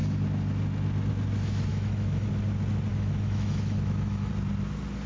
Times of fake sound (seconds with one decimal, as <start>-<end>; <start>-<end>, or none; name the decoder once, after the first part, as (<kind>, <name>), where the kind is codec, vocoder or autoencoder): 1.7-2.3 (autoencoder, DAC-VAE); 2.9-4.3